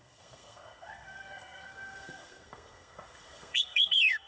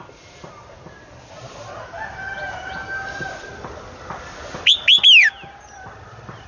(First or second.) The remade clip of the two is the first